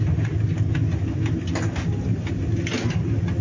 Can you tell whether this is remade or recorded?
recorded